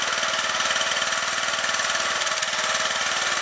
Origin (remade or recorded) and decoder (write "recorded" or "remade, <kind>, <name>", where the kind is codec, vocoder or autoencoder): recorded